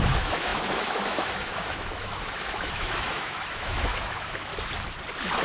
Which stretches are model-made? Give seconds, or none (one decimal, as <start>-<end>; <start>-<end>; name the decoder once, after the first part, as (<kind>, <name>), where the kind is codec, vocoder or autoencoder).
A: 0.0-4.5 (autoencoder, DAC-VAE)